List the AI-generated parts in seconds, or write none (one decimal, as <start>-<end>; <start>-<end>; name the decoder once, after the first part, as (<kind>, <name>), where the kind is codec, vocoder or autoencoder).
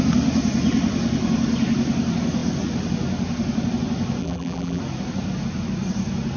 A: 4.2-4.8 (vocoder, BigVGAN v2)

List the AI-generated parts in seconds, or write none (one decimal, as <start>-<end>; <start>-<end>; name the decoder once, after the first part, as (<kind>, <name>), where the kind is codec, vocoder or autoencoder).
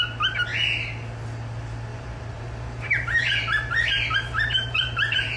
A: 1.9-5.4 (vocoder, BigVGAN v2)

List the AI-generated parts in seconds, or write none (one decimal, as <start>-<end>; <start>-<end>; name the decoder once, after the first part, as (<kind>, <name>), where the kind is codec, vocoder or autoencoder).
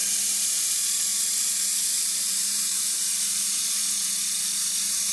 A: 0.0-3.8 (vocoder, BigVGAN v2); 4.4-5.1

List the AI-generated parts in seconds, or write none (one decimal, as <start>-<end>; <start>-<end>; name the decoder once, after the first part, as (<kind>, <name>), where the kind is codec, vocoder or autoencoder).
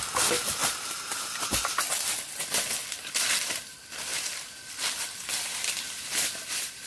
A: 0.0-4.1 (vocoder, BigVGAN v2); 4.7-6.9